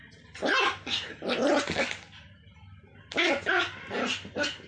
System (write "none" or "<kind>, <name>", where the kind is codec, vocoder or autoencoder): none